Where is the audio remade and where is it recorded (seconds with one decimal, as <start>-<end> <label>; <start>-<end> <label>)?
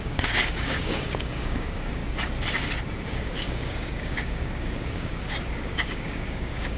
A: 0.0-2.0 remade; 2.0-3.0 recorded; 3.0-6.8 remade